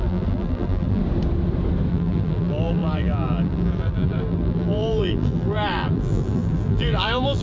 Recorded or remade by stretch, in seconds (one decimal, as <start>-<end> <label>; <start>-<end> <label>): 0.0-1.0 remade; 1.0-1.9 recorded; 1.9-7.4 remade

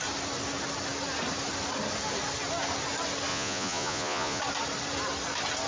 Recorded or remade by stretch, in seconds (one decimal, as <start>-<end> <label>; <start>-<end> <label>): 0.0-3.3 recorded; 3.3-4.4 remade; 4.4-5.7 recorded

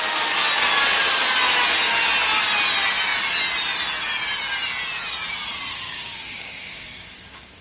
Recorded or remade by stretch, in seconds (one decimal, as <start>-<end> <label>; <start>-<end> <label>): 0.0-5.7 recorded; 5.7-7.6 remade

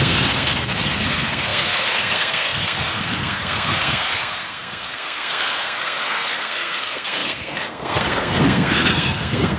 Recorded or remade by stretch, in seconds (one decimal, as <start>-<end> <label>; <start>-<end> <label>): 0.0-9.6 remade

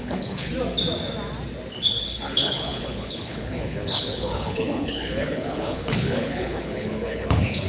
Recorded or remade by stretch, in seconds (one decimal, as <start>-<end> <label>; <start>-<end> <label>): 0.0-0.5 remade; 0.5-1.8 recorded; 1.8-7.7 remade

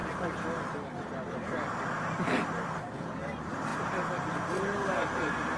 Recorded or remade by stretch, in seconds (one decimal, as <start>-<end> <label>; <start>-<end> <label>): 0.0-1.9 recorded; 1.9-5.6 remade

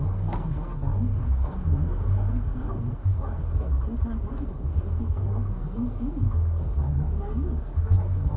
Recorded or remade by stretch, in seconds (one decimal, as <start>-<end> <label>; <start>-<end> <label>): 0.0-3.7 remade; 3.7-4.3 recorded; 4.3-8.4 remade

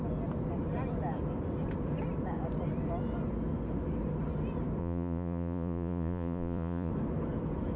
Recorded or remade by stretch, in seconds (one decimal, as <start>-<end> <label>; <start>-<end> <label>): 0.0-4.8 recorded; 4.8-6.9 remade; 6.9-7.8 recorded